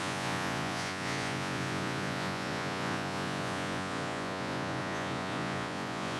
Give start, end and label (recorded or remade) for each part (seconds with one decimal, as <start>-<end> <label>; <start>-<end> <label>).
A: 0.0-6.2 remade